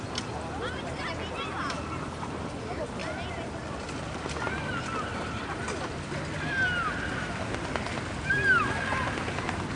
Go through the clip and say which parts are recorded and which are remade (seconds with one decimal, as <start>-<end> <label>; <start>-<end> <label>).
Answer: 0.0-9.8 recorded